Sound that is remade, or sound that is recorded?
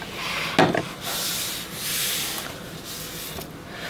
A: recorded